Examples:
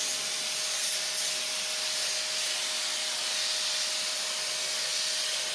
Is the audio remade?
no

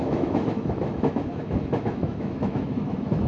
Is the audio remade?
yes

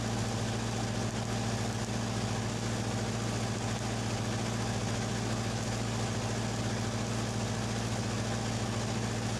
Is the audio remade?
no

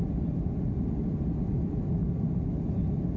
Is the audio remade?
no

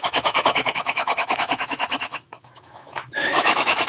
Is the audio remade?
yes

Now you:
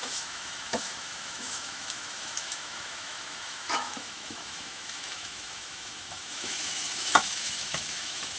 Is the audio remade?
yes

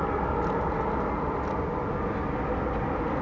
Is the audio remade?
no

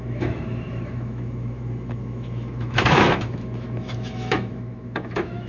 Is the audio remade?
yes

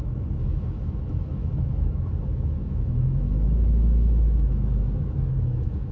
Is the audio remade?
yes